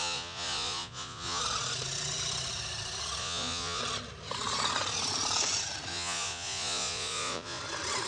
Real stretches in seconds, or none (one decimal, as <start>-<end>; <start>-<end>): 1.4-3.2; 3.8-5.9; 7.6-8.1